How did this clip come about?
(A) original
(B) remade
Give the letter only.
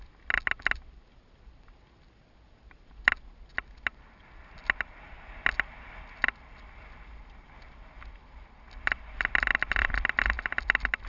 A